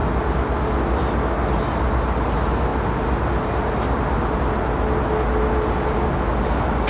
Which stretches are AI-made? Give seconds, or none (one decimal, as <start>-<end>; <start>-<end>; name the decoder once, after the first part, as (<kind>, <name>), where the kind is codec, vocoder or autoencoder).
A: none